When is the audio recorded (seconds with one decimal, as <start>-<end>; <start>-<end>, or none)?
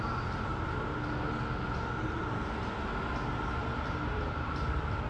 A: 0.5-3.6